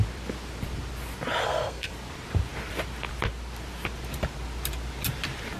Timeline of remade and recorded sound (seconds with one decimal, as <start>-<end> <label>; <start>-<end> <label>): 0.0-1.4 recorded; 1.4-1.9 remade; 1.9-5.6 recorded